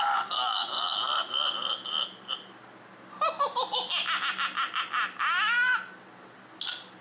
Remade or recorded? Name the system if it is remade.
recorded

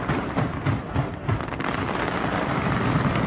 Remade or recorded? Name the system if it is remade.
remade, vocoder, BigVGAN v2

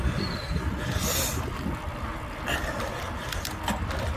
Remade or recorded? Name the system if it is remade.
recorded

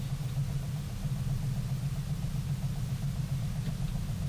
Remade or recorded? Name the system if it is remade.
recorded